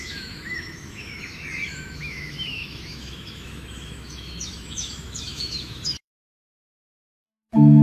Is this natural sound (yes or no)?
no